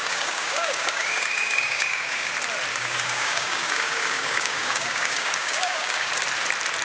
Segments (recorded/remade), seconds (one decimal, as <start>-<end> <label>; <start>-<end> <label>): 0.0-2.3 remade; 2.3-2.7 recorded; 2.7-6.1 remade; 6.1-6.8 recorded